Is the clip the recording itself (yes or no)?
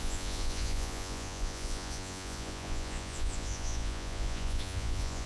no